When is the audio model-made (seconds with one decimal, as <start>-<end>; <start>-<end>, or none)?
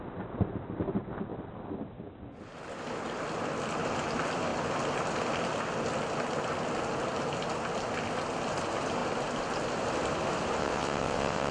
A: 10.6-11.5